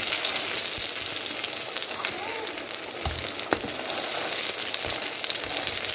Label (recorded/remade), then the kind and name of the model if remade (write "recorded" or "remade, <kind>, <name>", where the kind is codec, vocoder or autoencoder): recorded